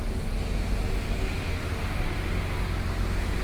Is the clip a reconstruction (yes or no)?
no